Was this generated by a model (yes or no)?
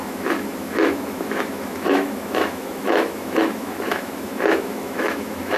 yes